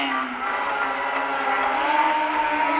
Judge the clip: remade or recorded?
recorded